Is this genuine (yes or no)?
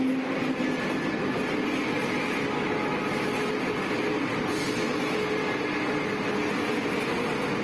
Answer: yes